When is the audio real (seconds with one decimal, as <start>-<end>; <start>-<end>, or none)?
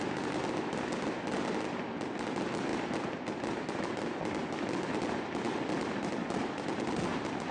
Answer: 0.0-7.5